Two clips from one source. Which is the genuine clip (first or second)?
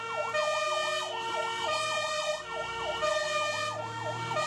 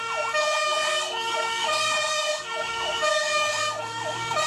first